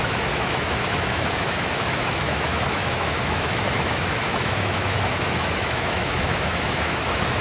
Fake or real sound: fake